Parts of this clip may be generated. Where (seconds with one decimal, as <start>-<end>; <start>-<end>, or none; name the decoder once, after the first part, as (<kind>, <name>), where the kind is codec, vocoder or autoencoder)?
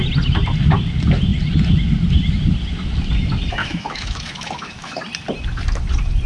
3.6-5.0 (autoencoder, DAC-VAE)